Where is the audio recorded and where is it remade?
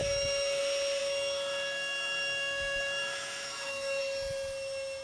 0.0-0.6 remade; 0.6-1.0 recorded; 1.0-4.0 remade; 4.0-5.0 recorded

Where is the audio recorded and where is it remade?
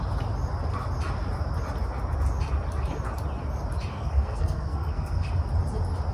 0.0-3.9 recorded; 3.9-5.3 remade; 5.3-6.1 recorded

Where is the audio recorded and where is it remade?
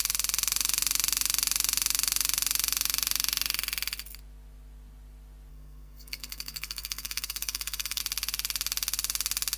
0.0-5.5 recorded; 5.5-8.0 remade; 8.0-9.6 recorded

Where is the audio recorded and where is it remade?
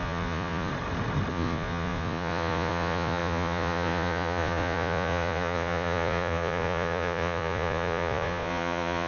0.0-0.7 remade; 0.7-1.3 recorded; 1.3-9.1 remade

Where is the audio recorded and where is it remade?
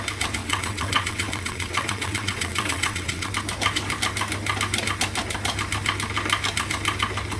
0.0-0.4 recorded; 0.4-3.3 remade; 3.3-7.4 recorded